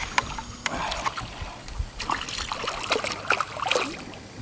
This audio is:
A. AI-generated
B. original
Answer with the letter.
B